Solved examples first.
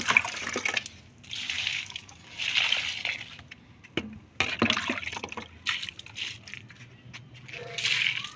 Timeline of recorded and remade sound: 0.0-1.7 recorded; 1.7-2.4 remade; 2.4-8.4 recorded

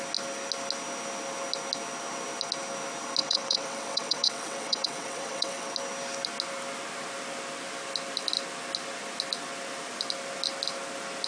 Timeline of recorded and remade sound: 0.0-3.2 recorded; 3.2-5.7 remade; 5.7-11.3 recorded

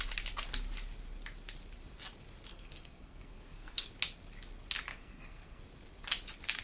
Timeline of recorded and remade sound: 0.0-2.5 recorded; 2.5-3.9 remade; 3.9-4.9 recorded; 4.9-5.6 remade; 5.6-6.6 recorded

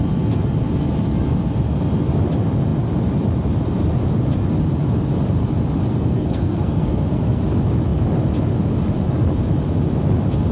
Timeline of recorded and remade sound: 0.0-5.9 recorded; 5.9-7.4 remade; 7.4-10.5 recorded

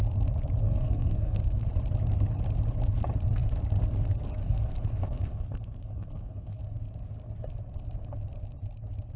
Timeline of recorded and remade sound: 0.0-0.6 recorded; 0.6-1.7 remade; 1.7-4.4 recorded; 4.4-6.6 remade; 6.6-9.2 recorded